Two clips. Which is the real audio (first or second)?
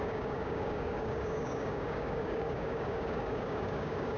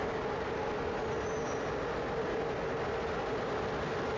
second